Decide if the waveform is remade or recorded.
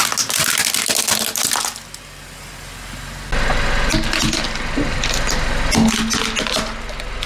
recorded